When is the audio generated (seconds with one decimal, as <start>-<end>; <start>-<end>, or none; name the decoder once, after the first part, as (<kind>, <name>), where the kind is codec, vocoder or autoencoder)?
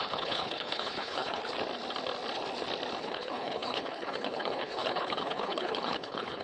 0.0-1.4 (codec, HILCodec); 3.0-6.4